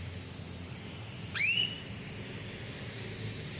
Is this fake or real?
real